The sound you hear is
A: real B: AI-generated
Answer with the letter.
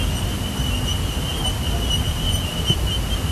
A